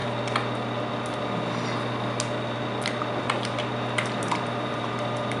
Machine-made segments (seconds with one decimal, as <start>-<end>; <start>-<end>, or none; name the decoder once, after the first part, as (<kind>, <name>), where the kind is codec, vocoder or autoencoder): 3.2-5.4 (vocoder, BigVGAN v2)